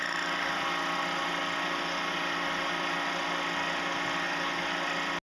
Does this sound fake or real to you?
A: real